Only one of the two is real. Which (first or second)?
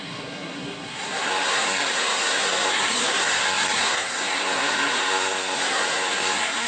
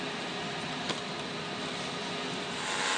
second